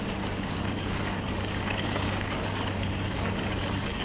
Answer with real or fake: fake